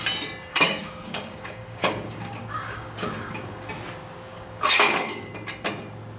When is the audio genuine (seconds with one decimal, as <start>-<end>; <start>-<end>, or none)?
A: 0.0-0.5; 3.7-4.3; 5.3-6.2